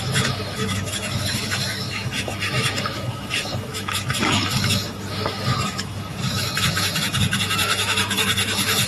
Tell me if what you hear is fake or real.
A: fake